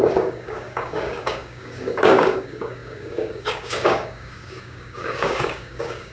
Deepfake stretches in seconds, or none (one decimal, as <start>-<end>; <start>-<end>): 0.0-6.1